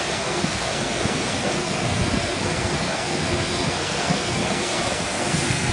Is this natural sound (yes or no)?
no